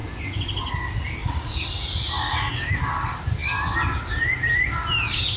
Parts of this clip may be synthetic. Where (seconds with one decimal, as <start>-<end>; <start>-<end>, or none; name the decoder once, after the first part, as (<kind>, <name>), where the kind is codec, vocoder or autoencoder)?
1.2-2.5 (vocoder, Vocos)